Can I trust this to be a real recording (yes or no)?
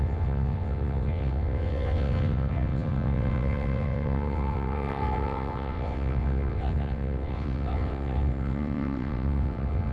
no